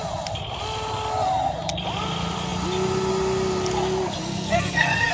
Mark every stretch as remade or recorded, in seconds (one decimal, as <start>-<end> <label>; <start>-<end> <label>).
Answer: 0.0-4.2 recorded; 4.2-5.1 remade